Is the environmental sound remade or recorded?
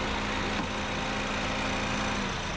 recorded